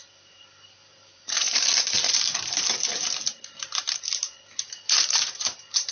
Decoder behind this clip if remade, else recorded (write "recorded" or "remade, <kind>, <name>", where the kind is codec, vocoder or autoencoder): remade, vocoder, BigVGAN v2